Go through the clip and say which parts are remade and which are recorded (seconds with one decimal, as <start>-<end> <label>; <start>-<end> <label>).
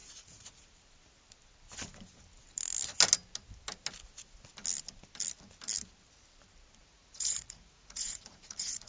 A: 0.0-0.6 remade; 0.6-6.8 recorded; 6.8-8.9 remade